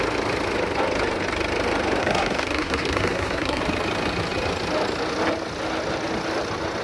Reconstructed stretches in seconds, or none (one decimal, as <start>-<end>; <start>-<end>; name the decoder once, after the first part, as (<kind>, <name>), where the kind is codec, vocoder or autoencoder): 2.0-3.6 (codec, SNAC)